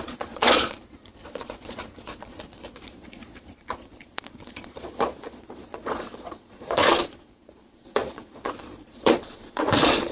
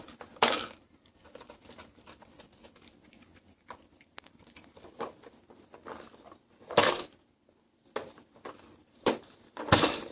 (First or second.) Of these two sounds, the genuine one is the second